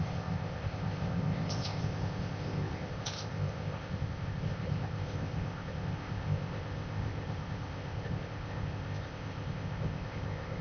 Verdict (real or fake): fake